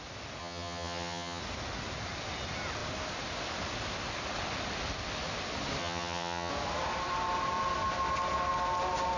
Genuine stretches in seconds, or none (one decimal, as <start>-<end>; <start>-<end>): 0.0-0.4; 1.4-5.8; 6.5-9.2